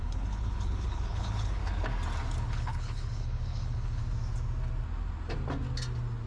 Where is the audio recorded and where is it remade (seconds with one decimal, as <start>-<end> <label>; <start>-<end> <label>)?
0.0-1.6 remade; 1.6-2.4 recorded; 2.4-4.0 remade; 4.0-6.3 recorded